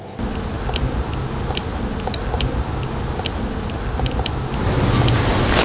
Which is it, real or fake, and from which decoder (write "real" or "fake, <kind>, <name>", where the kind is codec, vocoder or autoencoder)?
real